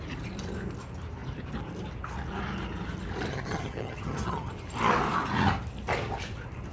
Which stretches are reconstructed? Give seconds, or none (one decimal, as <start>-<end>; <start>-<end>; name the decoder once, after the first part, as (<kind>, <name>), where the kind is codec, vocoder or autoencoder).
3.3-4.5 (vocoder, HiFi-GAN)